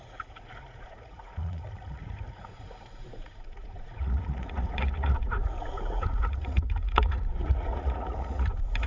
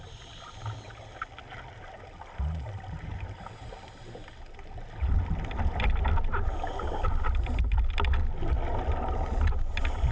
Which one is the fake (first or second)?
first